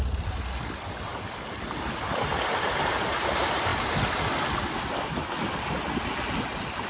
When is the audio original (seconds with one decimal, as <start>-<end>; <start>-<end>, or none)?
0.0-6.9